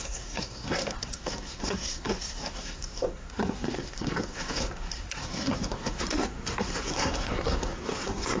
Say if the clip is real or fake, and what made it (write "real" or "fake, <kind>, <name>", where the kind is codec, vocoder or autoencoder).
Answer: fake, codec, SNAC